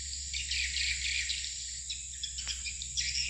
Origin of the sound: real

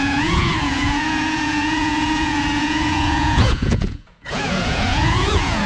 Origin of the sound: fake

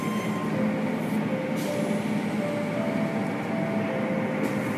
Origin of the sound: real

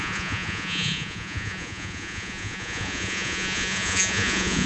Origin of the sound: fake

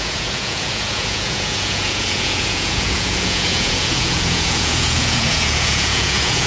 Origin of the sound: fake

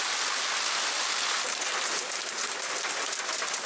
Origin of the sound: real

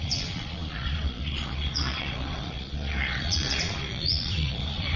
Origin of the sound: fake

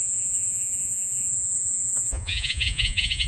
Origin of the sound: fake